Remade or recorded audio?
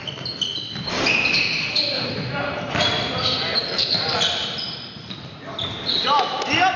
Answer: recorded